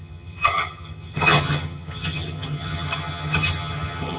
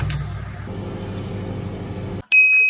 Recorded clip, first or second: second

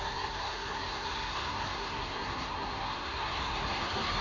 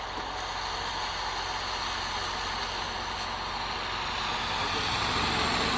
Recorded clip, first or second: second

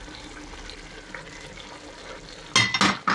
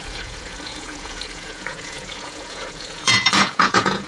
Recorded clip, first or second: first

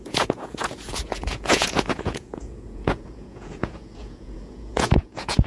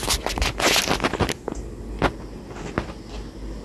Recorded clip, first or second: second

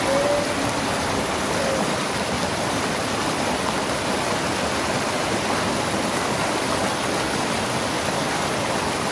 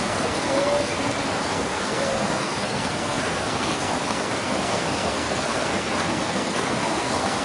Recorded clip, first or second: first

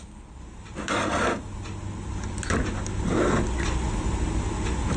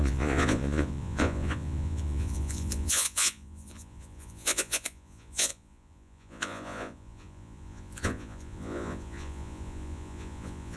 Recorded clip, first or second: first